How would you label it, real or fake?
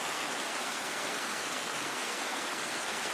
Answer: fake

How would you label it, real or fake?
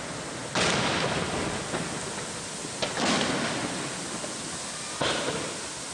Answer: real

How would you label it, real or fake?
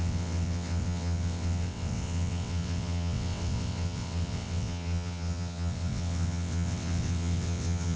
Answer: fake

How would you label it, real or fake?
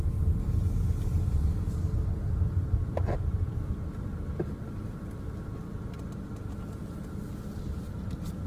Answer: real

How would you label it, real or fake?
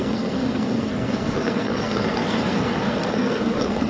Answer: fake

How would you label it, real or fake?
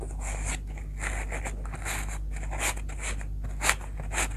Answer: real